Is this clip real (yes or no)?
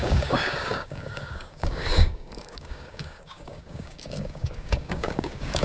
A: no